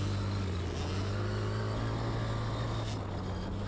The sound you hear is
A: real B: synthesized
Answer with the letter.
A